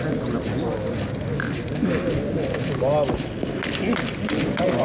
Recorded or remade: recorded